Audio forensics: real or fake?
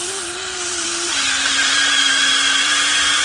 fake